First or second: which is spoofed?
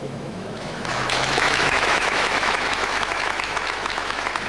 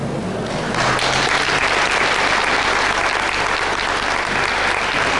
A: first